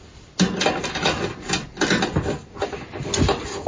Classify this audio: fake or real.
real